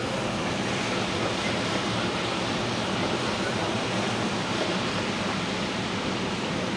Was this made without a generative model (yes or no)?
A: no